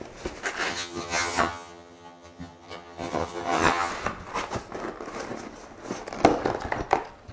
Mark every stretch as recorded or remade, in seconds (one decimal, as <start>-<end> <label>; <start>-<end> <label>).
0.0-0.7 recorded; 0.7-3.9 remade; 3.9-7.3 recorded